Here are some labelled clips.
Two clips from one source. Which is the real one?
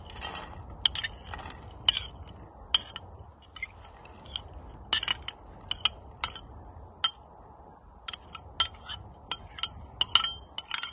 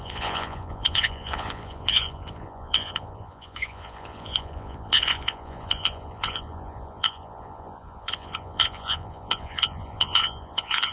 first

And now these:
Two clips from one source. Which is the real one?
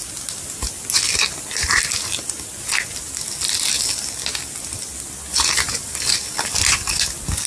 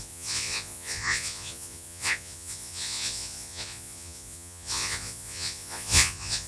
first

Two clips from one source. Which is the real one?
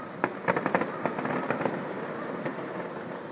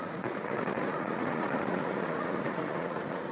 first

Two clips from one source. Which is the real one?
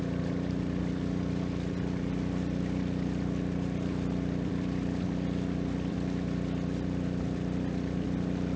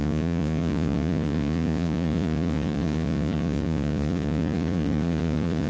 first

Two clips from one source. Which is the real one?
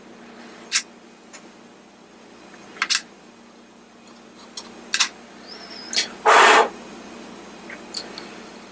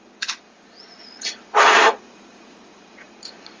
first